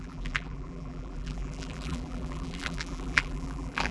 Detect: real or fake fake